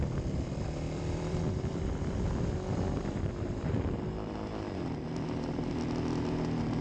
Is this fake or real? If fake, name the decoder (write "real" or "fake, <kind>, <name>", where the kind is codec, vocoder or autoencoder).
fake, vocoder, BigVGAN v2